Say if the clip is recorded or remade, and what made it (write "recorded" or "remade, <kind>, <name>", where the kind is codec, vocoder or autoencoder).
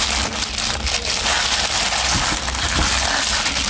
recorded